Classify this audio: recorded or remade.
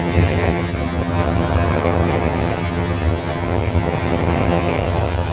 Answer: remade